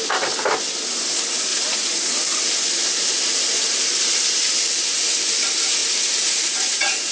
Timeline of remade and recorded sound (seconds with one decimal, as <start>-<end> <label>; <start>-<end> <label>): 0.0-1.5 recorded; 1.5-2.1 remade; 2.1-5.8 recorded; 5.8-7.1 remade